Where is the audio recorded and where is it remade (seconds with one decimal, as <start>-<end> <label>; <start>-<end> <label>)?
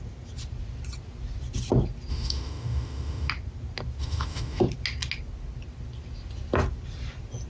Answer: 0.0-2.1 recorded; 2.1-3.3 remade; 3.3-4.0 recorded; 4.0-4.6 remade; 4.6-7.5 recorded